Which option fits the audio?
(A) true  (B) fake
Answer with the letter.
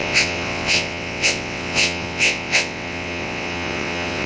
B